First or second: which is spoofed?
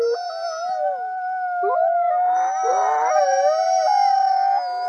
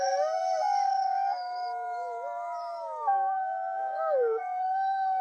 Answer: second